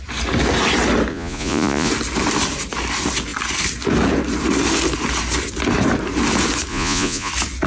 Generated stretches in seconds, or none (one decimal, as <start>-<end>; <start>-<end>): 1.1-1.9; 6.7-7.3